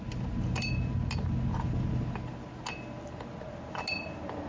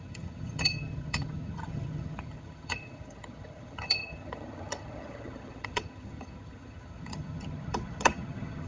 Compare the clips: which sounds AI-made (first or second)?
second